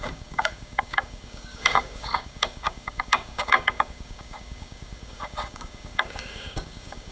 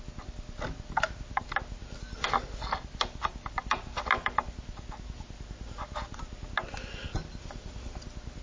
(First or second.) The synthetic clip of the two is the first